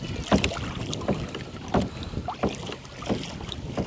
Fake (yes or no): no